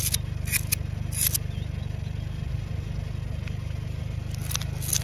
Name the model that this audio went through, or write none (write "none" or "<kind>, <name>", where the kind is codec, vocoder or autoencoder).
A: none